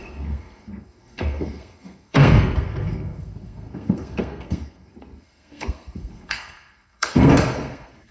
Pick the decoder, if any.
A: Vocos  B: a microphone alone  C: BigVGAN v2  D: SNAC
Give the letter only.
D